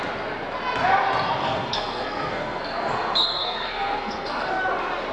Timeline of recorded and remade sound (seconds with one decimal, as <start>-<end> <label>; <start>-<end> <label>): 0.0-1.4 recorded; 1.4-4.5 remade; 4.5-5.1 recorded